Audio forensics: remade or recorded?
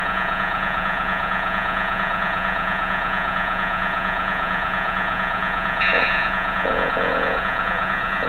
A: remade